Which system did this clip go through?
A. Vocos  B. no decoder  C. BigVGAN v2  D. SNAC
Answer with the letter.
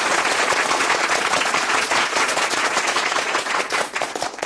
A